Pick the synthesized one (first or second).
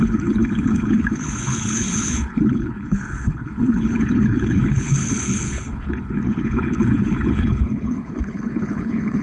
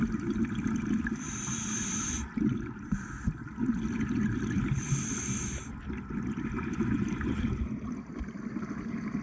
first